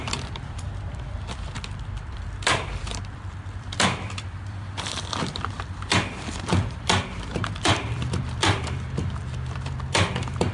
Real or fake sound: fake